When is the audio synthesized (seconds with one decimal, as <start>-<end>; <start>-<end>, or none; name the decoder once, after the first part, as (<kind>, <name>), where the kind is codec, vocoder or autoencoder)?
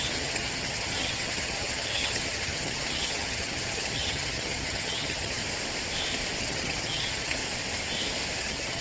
0.0-5.4 (vocoder, HiFi-GAN); 6.4-7.4; 8.4-8.8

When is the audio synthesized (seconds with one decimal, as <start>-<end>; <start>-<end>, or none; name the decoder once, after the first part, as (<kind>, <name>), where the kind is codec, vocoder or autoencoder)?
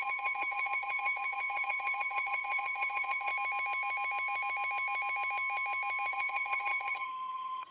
0.0-3.3 (vocoder, HiFi-GAN); 6.1-7.7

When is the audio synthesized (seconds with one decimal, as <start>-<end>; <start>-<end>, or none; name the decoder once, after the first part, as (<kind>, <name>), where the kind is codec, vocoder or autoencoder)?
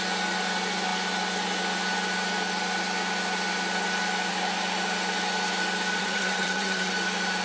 6.0-6.9 (vocoder, HiFi-GAN)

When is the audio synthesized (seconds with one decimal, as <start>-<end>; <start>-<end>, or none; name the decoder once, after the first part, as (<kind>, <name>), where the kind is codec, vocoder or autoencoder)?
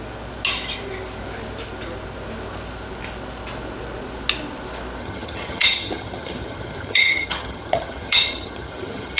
5.0-9.2 (vocoder, HiFi-GAN)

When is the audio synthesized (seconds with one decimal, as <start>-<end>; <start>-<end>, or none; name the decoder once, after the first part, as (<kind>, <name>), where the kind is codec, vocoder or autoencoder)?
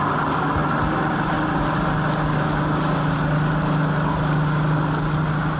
none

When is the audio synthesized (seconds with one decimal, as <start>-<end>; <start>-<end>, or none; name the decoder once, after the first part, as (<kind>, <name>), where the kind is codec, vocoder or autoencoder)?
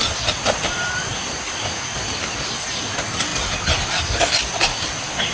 none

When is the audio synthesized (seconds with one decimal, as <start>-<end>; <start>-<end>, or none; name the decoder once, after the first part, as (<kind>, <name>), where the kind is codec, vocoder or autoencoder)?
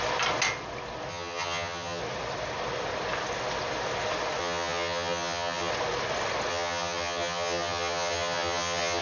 1.1-2.0 (vocoder, HiFi-GAN); 4.4-5.7; 6.5-9.0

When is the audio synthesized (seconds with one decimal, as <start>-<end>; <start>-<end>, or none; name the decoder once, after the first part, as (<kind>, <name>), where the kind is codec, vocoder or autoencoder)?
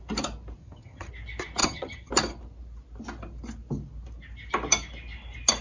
0.6-1.1 (vocoder, HiFi-GAN); 1.6-2.1